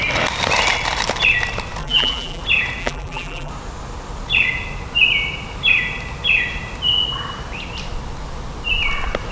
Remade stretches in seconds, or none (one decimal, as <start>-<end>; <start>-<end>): 1.8-2.4; 2.8-3.5